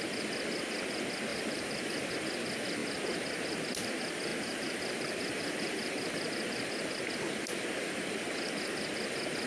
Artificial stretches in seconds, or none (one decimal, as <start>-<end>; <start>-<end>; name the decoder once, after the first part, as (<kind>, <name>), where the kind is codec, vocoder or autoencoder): 1.3-2.1 (vocoder, BigVGAN v2); 4.3-6.3